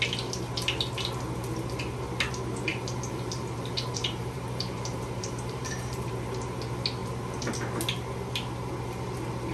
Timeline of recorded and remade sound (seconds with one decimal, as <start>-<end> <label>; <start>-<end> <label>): 0.0-2.7 recorded; 2.7-6.1 remade; 6.1-9.5 recorded